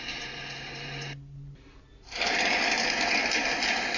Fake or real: real